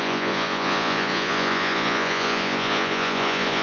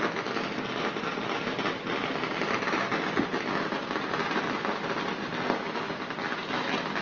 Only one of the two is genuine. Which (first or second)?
second